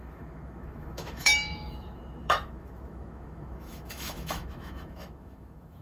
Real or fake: fake